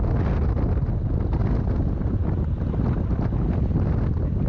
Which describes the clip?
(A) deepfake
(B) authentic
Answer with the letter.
B